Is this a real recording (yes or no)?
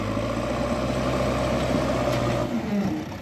yes